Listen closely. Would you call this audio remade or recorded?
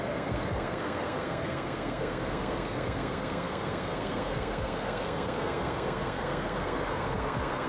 remade